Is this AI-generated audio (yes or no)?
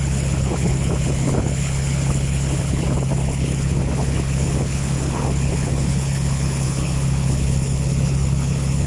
yes